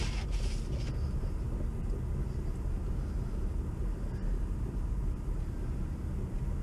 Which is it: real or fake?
real